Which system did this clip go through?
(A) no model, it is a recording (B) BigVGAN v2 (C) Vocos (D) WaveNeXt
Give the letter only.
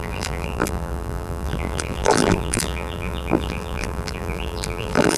B